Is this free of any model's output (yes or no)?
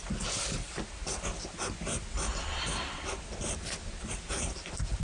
yes